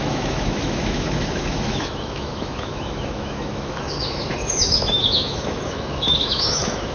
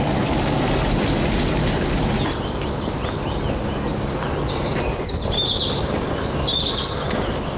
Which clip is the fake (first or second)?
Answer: first